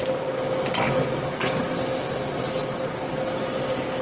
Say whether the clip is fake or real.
real